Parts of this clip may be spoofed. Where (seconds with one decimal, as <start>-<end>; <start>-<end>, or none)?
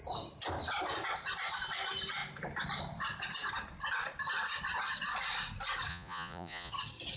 5.9-6.7